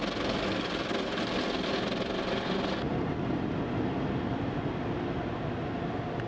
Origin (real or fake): real